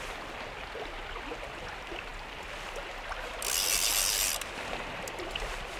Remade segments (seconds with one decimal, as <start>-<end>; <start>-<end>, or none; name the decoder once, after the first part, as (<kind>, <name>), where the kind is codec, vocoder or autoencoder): none